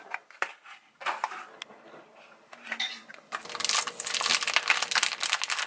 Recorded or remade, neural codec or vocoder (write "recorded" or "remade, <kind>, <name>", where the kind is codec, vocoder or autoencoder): recorded